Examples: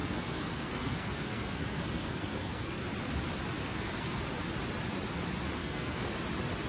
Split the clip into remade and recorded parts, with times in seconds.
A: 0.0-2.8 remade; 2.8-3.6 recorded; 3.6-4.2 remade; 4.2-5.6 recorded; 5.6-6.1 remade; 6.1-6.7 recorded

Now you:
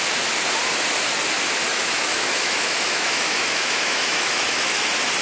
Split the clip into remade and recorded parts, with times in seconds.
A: 0.0-1.7 recorded; 1.7-4.8 remade; 4.8-5.2 recorded

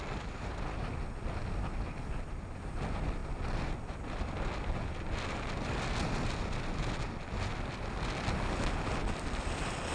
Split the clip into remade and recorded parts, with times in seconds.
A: 0.0-9.9 recorded

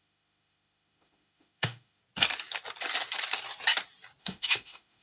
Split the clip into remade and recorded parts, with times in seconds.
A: 0.0-2.0 remade; 2.0-4.2 recorded; 4.2-5.0 remade

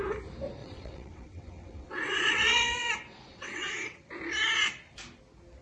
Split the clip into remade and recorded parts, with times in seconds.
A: 0.0-0.6 recorded; 0.6-2.9 remade; 2.9-3.3 recorded; 3.3-4.1 remade; 4.1-5.6 recorded

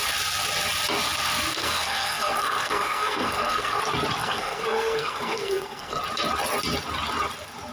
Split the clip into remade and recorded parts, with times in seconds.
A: 0.0-1.5 recorded; 1.5-3.8 remade; 3.8-4.2 recorded; 4.2-6.0 remade; 6.0-7.7 recorded

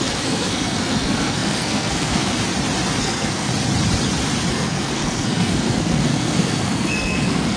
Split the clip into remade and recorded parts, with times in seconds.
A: 0.0-2.3 remade; 2.3-3.0 recorded; 3.0-3.5 remade; 3.5-4.5 recorded; 4.5-7.6 remade

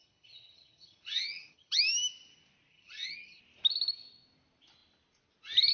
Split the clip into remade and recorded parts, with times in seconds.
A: 0.0-1.8 remade; 1.8-2.7 recorded; 2.7-3.4 remade; 3.4-5.7 recorded